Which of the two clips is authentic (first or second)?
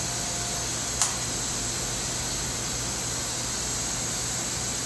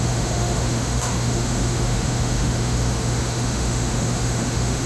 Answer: first